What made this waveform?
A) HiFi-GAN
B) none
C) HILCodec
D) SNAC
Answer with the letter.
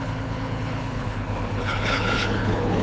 C